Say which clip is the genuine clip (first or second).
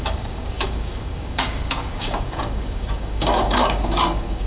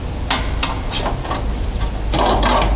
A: second